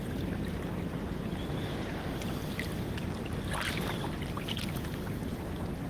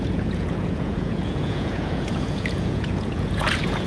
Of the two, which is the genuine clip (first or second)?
first